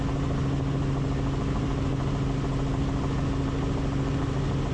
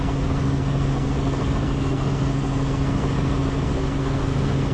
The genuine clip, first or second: first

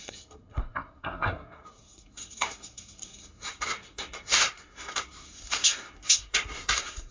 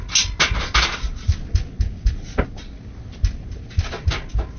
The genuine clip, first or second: second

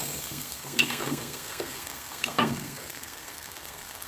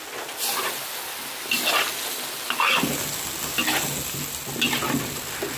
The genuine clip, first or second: second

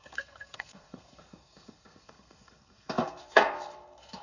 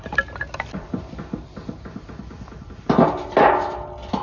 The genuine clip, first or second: second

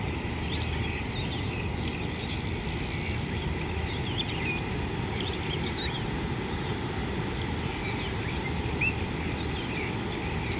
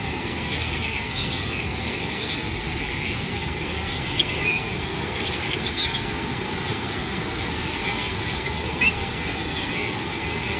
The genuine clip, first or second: first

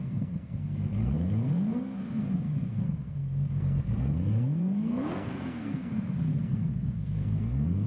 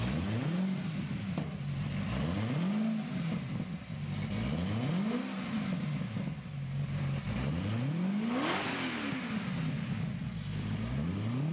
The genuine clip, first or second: second